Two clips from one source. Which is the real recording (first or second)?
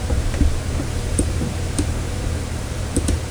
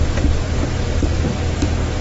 second